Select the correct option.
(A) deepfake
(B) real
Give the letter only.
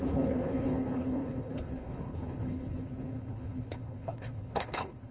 A